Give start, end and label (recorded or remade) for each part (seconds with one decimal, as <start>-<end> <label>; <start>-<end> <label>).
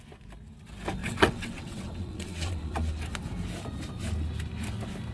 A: 0.0-1.0 recorded; 1.0-3.0 remade; 3.0-5.1 recorded